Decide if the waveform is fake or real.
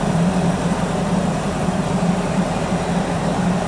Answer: fake